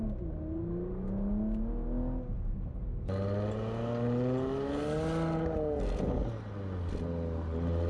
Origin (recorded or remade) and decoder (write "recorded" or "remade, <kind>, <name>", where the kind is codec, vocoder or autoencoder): recorded